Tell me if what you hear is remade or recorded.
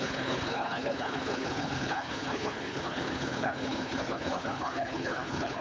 remade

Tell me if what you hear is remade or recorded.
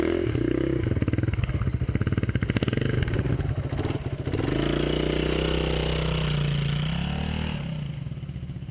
recorded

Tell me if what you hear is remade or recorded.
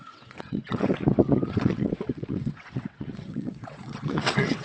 remade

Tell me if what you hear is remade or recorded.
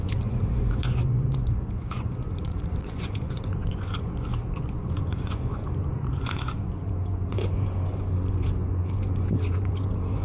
remade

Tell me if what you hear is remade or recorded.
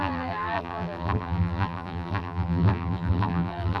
remade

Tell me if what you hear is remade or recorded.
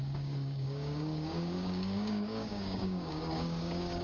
remade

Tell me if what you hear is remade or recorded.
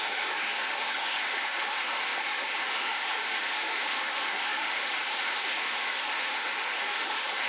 remade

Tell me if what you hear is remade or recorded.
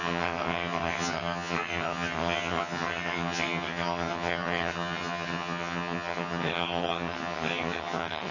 remade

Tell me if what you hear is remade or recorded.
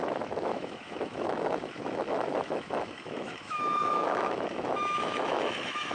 remade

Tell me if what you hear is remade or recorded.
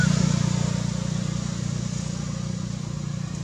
recorded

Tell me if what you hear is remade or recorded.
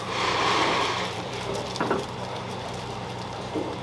remade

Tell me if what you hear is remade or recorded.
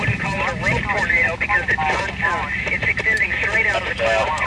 recorded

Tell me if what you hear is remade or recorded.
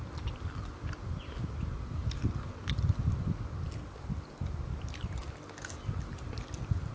recorded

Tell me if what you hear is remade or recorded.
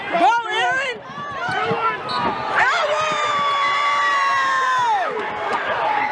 remade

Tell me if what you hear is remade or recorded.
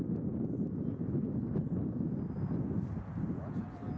recorded